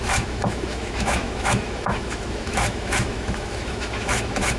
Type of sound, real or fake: fake